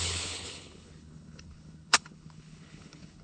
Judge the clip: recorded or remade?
remade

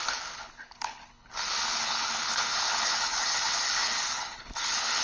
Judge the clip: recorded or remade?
remade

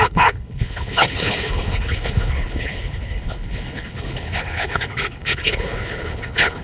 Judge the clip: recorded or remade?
remade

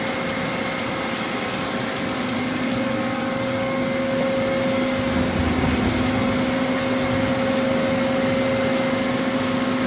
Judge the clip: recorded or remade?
recorded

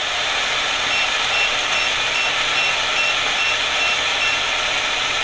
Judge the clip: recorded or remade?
recorded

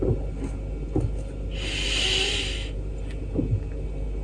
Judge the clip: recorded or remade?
recorded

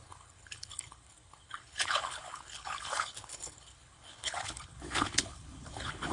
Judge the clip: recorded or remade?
remade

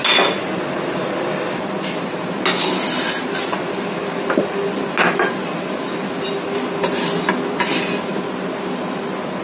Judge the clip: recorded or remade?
recorded